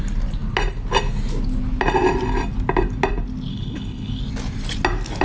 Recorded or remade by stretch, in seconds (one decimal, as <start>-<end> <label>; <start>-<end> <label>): 0.0-3.5 recorded; 3.5-4.2 remade; 4.2-5.2 recorded